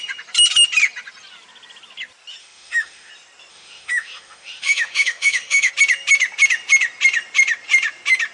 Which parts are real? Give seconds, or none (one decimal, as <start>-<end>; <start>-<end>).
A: 0.0-2.4; 3.1-3.5; 5.7-8.3